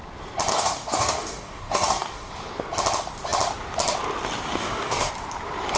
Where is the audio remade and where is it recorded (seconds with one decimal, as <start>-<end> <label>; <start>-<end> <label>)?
0.0-0.5 recorded; 0.5-2.3 remade; 2.3-4.6 recorded; 4.6-5.1 remade; 5.1-5.8 recorded